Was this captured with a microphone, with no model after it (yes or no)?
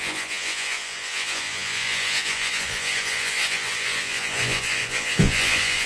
no